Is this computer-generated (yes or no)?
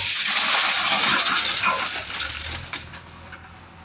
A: no